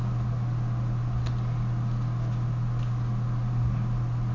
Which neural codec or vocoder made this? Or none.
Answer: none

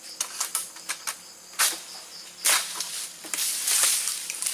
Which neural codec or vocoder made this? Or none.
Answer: none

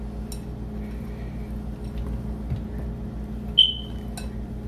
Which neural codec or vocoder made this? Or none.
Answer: none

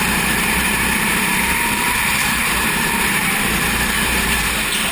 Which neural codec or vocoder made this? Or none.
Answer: vocoder, BigVGAN v2